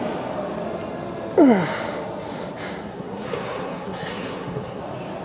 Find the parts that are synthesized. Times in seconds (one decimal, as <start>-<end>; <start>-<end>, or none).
2.8-4.8